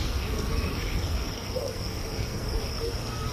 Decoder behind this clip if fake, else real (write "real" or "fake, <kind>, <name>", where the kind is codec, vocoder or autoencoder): fake, codec, SNAC